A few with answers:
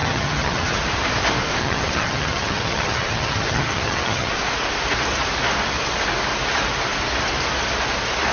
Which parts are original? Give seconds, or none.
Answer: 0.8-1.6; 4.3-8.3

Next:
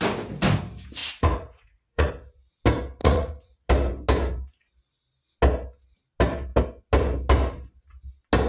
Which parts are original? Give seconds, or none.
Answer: 0.0-1.0; 2.1-3.0; 3.7-8.5

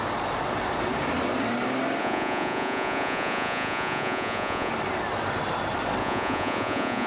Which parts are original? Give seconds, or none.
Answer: 0.0-2.0; 4.7-6.0